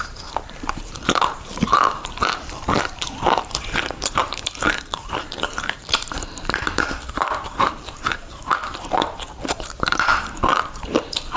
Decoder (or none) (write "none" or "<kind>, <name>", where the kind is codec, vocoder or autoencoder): vocoder, BigVGAN v2